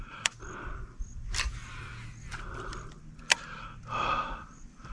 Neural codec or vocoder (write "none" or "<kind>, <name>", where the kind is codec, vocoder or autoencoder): vocoder, BigVGAN v2